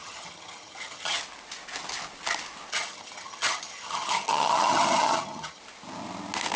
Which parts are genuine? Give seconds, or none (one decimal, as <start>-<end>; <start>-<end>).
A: 1.2-2.7; 5.6-6.6